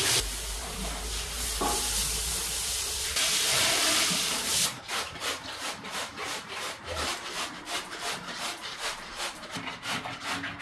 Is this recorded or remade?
remade